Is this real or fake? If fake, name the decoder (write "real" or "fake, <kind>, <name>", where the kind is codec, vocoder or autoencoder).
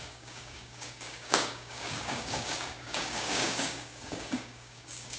fake, codec, DAC